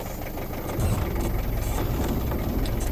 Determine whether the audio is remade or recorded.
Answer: recorded